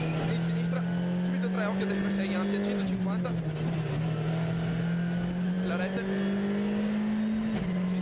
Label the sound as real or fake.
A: real